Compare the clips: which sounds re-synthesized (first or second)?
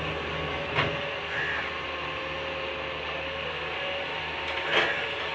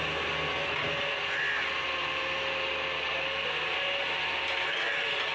first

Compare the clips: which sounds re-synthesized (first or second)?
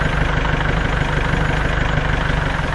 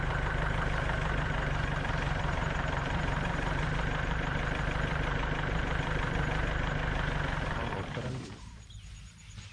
second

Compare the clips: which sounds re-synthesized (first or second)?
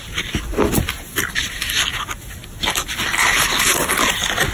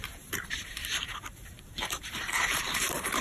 second